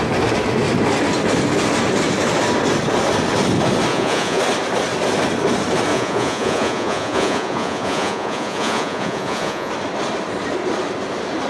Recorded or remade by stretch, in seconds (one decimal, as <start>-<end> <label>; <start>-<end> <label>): 0.0-3.9 recorded; 3.9-4.4 remade; 4.4-5.9 recorded; 5.9-9.7 remade; 9.7-11.5 recorded